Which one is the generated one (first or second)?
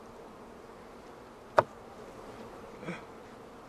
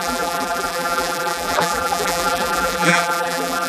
second